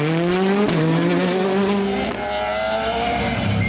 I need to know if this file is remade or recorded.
recorded